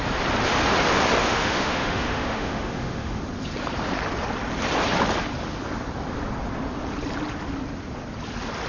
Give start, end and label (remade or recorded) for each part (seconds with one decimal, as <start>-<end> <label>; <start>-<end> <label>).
0.0-1.2 recorded; 1.2-3.2 remade; 3.2-8.7 recorded